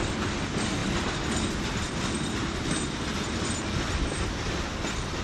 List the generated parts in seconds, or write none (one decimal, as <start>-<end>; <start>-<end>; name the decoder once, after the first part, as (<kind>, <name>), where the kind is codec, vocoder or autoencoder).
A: none